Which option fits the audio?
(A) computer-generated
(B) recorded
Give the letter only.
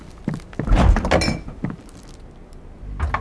B